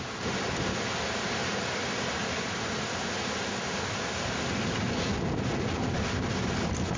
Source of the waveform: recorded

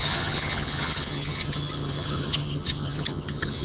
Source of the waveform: remade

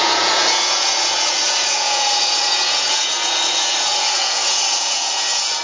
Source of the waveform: remade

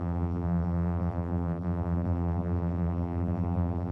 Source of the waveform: remade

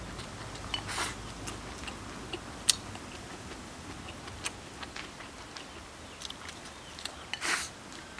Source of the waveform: recorded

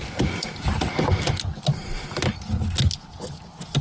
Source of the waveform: recorded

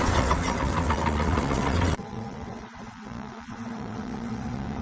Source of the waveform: remade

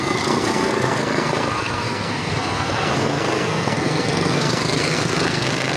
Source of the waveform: remade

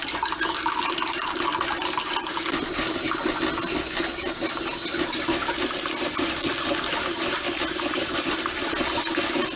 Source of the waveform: recorded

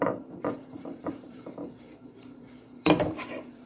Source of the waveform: remade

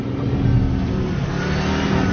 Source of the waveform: recorded